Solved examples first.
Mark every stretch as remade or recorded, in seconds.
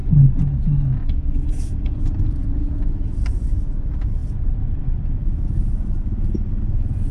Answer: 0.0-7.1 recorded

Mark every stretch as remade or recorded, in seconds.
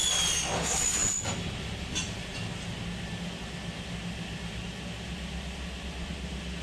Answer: 0.0-6.6 recorded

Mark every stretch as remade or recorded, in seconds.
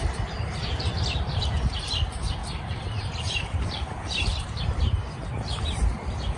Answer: 0.0-6.4 remade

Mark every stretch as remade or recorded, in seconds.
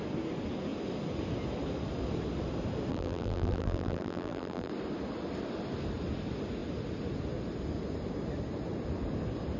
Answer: 0.0-2.9 recorded; 2.9-4.7 remade; 4.7-9.6 recorded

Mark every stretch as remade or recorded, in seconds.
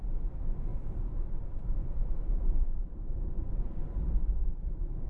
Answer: 0.0-0.7 recorded; 0.7-3.8 remade; 3.8-4.2 recorded; 4.2-5.1 remade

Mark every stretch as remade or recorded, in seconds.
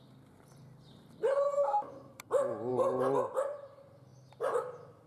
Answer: 0.0-4.1 remade; 4.1-5.1 recorded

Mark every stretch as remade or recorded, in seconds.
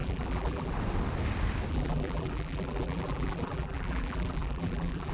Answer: 0.0-0.7 remade; 0.7-1.7 recorded; 1.7-5.1 remade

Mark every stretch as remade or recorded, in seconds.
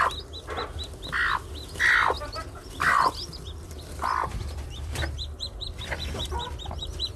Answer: 0.0-2.6 recorded; 2.6-7.2 remade